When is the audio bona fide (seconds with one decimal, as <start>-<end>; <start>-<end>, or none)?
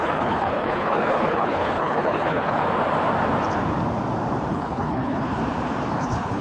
2.6-4.5; 5.4-5.9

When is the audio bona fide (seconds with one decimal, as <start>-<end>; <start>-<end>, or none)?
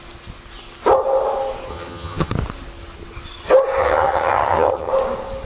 0.0-1.7; 2.3-3.8; 4.9-5.5